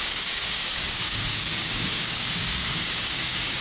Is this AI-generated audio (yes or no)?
yes